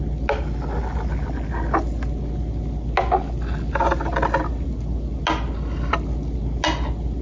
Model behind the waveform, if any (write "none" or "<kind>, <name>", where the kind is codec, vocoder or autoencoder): none